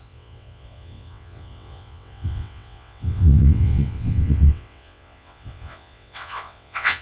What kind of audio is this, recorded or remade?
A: remade